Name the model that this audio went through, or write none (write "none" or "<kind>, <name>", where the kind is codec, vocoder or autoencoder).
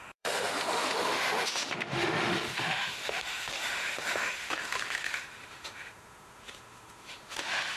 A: autoencoder, DAC-VAE